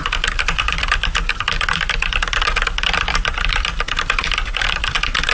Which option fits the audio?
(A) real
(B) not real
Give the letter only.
A